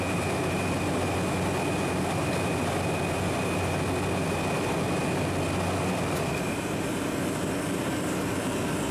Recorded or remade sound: recorded